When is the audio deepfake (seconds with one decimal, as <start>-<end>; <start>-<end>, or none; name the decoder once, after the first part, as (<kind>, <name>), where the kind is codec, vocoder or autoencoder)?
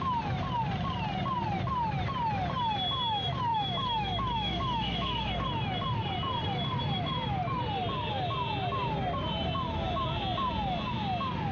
3.5-5.3 (autoencoder, DAC-VAE)